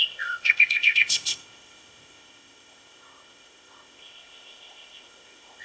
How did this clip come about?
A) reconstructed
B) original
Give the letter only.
A